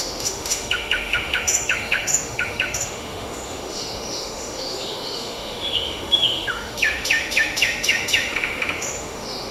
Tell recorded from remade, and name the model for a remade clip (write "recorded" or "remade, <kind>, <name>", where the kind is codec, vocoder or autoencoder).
remade, autoencoder, DAC-VAE